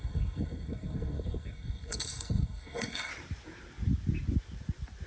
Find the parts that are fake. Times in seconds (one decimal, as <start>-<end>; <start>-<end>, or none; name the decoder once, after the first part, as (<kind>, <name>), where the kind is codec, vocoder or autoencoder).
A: 0.0-3.1 (codec, SNAC)